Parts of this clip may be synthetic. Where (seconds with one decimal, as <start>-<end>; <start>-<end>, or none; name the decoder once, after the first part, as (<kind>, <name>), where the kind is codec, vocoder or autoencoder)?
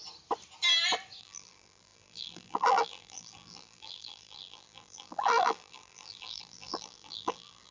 1.2-7.7 (vocoder, BigVGAN v2)